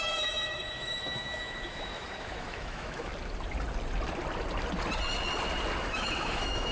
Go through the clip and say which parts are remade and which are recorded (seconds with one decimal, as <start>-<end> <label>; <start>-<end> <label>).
0.0-3.1 remade; 3.1-5.8 recorded; 5.8-6.7 remade